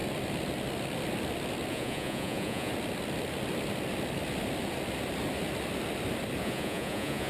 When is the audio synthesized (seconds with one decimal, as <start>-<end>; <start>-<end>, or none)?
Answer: 1.7-2.7; 6.4-7.3